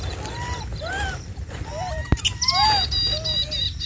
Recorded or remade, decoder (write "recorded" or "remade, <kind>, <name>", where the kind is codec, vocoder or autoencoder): recorded